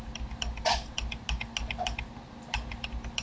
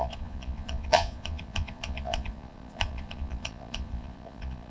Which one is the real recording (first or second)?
first